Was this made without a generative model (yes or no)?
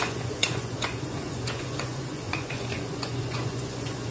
no